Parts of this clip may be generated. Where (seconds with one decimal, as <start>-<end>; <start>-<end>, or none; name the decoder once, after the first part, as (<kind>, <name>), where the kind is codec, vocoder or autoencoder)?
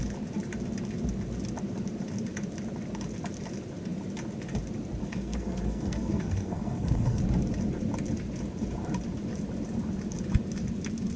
5.0-7.2 (codec, SNAC)